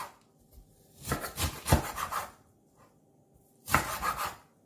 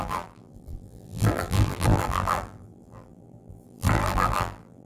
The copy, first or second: second